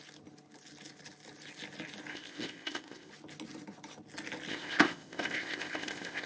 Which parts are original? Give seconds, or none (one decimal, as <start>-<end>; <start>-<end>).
0.0-2.1; 3.1-4.5